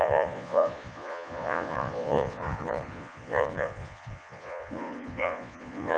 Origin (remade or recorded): remade